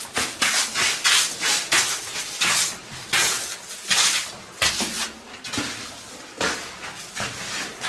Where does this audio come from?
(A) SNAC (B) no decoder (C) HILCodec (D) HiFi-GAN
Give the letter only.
B